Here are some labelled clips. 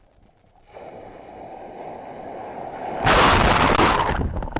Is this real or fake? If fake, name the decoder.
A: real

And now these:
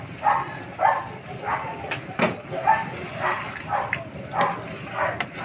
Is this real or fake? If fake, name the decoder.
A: real